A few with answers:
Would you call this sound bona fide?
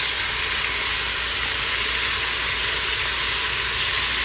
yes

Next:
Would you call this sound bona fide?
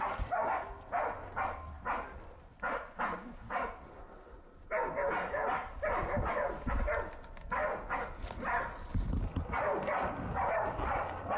yes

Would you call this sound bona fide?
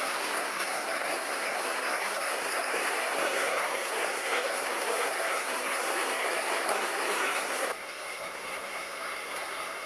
no